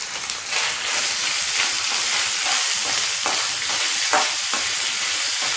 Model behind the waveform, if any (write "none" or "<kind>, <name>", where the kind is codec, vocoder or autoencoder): none